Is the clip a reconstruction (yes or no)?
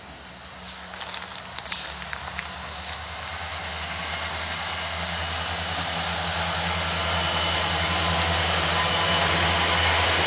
no